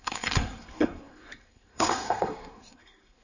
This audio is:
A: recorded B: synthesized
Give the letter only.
B